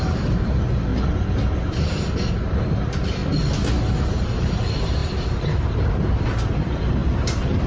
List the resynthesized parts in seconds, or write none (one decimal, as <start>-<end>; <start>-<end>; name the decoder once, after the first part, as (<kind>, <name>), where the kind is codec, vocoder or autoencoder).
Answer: 0.0-0.9 (vocoder, BigVGAN v2); 2.3-3.2; 4.0-7.7

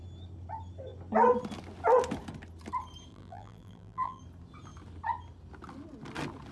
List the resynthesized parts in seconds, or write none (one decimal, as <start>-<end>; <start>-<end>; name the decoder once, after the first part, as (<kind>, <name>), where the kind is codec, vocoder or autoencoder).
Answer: 3.1-4.2 (vocoder, BigVGAN v2)

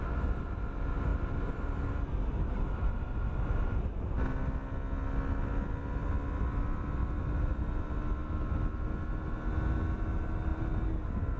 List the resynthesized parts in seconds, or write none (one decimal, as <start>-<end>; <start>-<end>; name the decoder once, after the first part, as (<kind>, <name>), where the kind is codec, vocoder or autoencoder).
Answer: 1.1-2.9 (vocoder, BigVGAN v2); 7.0-7.6; 10.5-11.4

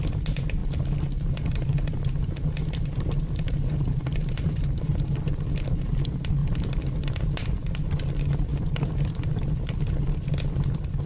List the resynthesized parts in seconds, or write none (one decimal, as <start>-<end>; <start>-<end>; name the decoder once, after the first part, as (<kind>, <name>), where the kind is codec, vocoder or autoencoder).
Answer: 0.6-5.9 (vocoder, BigVGAN v2); 6.4-7.1; 8.5-9.3

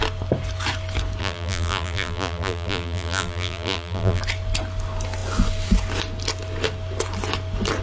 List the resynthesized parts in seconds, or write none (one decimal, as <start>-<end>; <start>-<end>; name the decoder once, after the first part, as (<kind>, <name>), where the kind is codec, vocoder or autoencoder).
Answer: 1.2-4.2 (vocoder, BigVGAN v2)

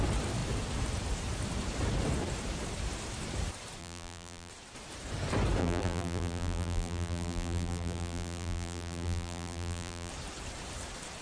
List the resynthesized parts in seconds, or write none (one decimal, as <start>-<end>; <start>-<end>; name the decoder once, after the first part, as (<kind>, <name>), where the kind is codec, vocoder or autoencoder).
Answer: 3.8-4.5 (vocoder, BigVGAN v2); 5.6-10.1

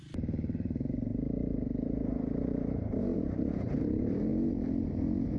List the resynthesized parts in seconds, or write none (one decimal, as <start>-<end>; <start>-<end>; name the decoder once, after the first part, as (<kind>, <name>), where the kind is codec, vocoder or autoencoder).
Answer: 0.0-4.3 (vocoder, BigVGAN v2)

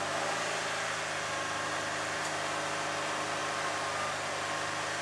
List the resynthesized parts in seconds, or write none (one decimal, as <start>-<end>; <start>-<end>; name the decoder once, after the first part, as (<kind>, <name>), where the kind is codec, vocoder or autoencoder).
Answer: none